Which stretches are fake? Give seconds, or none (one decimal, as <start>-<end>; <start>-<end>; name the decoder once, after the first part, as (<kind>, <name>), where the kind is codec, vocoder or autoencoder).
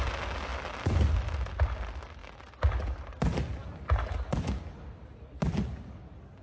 none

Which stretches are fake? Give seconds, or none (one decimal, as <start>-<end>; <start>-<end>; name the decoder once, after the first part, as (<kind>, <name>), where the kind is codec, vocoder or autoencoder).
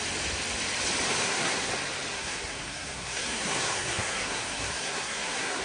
1.2-1.7 (codec, SNAC); 2.1-5.6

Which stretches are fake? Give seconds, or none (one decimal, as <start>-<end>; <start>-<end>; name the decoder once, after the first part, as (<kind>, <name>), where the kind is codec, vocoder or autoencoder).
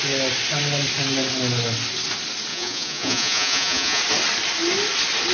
2.5-4.0 (vocoder, Vocos)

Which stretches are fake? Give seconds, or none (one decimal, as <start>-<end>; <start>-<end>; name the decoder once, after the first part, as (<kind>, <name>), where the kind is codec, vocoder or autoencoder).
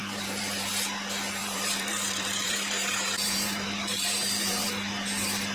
0.0-0.7 (vocoder, BigVGAN v2); 1.4-4.7